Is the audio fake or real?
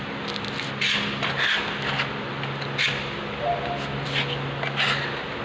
real